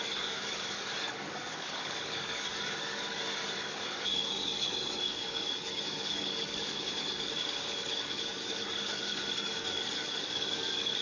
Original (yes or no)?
no